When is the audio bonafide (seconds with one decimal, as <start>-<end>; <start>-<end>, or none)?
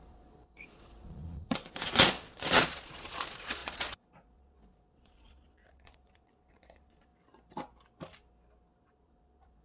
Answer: 7.1-8.8